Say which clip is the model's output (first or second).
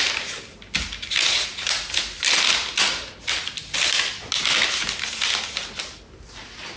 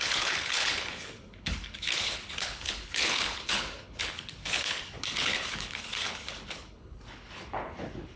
second